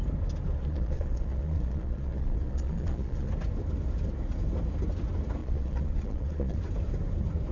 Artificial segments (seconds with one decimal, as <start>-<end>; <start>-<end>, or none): 0.6-3.3; 5.4-6.6